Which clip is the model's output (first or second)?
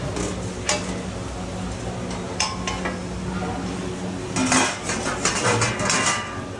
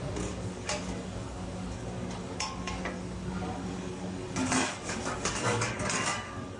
second